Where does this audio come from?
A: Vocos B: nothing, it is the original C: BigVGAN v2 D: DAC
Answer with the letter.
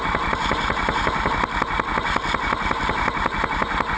B